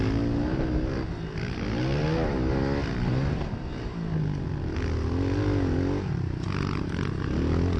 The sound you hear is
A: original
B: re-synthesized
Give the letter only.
A